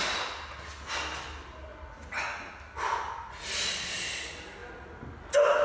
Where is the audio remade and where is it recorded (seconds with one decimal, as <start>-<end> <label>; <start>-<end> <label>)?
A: 0.0-5.6 recorded